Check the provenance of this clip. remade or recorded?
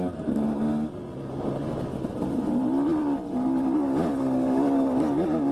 recorded